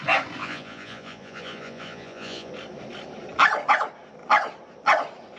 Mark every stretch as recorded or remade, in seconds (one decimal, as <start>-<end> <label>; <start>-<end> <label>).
0.0-0.4 recorded; 0.4-2.5 remade; 2.5-5.4 recorded